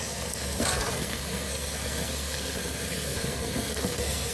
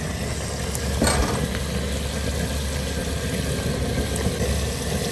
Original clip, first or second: second